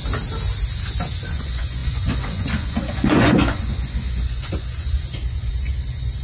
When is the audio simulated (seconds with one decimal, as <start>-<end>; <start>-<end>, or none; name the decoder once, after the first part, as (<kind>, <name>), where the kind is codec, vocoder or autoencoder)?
1.3-6.2 (vocoder, Vocos)

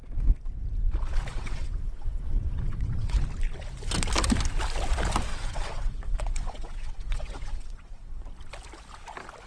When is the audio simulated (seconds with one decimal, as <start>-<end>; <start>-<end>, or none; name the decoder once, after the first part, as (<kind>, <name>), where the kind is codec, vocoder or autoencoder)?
1.3-3.2 (vocoder, WaveNeXt); 5.3-8.2

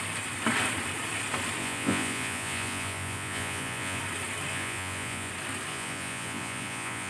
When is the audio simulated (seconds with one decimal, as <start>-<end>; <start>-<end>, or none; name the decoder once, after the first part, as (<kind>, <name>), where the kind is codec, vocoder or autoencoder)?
1.6-4.0 (vocoder, Vocos); 4.5-5.3; 5.7-7.1